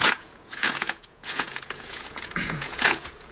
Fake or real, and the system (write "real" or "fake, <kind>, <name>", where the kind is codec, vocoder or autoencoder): fake, vocoder, Vocos